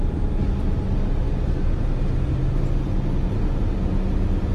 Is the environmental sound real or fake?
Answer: real